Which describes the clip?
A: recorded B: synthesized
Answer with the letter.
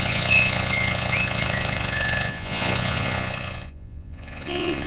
B